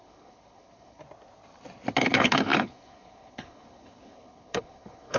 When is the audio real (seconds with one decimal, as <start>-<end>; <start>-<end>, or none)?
1.0-2.0